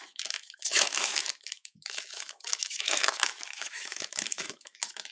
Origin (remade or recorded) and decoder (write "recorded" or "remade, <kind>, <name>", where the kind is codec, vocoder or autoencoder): remade, autoencoder, DAC-VAE